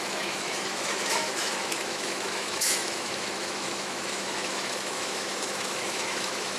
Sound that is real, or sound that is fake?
fake